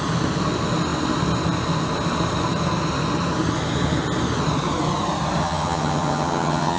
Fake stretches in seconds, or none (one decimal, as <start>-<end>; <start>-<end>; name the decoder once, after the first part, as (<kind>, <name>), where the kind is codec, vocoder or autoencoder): 5.4-6.8 (vocoder, HiFi-GAN)